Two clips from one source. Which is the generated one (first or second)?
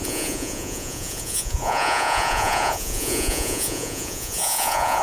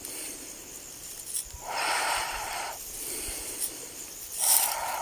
first